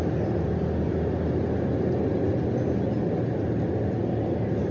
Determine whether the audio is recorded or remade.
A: recorded